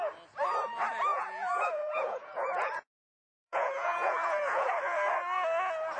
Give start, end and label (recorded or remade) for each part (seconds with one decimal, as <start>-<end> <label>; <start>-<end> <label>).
0.0-1.1 recorded; 1.1-4.7 remade; 4.7-6.0 recorded